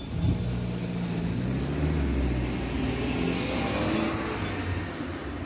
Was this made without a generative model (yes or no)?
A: yes